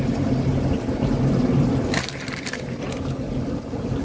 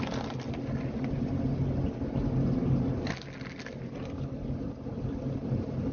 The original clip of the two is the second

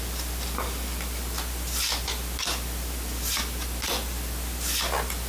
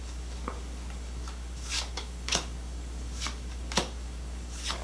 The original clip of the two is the first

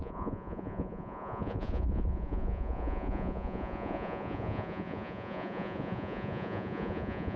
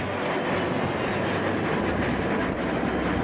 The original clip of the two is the second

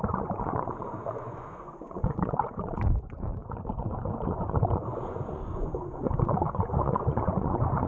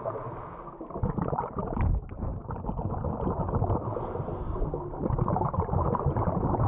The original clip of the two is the second